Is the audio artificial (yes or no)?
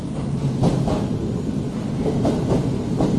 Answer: no